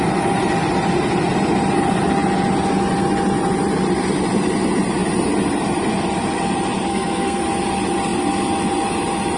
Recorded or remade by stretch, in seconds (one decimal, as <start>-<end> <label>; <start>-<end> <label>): 0.0-6.9 recorded; 6.9-7.4 remade; 7.4-9.4 recorded